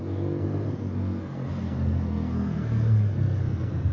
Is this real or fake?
fake